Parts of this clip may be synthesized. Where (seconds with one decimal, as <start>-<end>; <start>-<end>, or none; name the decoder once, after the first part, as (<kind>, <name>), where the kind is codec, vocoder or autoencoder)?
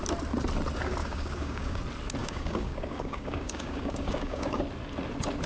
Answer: 1.0-1.8 (codec, DAC); 2.2-4.6